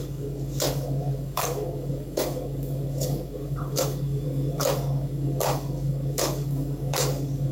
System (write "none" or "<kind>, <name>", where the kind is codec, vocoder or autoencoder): codec, DAC